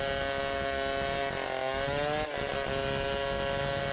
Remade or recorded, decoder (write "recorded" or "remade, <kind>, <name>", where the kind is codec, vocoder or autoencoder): recorded